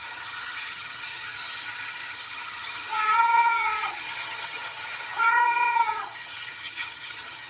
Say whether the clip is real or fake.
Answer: fake